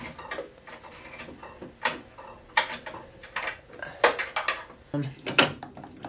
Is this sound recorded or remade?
recorded